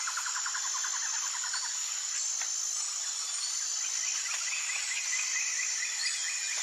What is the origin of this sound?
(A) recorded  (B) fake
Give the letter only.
A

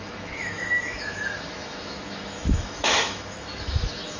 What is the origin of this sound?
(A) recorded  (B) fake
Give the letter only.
B